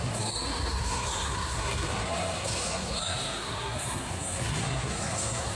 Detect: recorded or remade remade